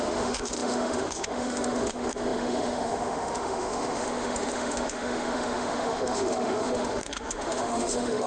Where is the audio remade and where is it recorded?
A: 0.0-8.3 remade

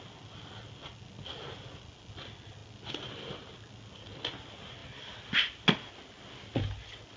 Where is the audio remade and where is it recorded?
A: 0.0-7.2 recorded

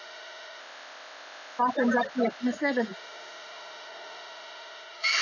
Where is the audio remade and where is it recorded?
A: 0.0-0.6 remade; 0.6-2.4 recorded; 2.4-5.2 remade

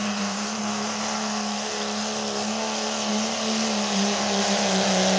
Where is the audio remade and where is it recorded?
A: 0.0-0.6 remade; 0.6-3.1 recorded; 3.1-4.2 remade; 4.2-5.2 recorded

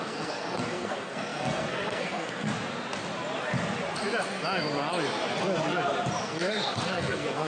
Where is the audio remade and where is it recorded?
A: 0.0-2.5 remade; 2.5-6.2 recorded; 6.2-7.5 remade

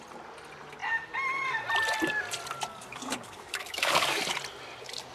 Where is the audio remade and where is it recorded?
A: 0.0-2.7 recorded; 2.7-4.2 remade; 4.2-5.1 recorded